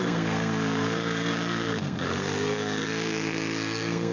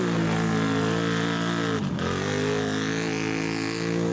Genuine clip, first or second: second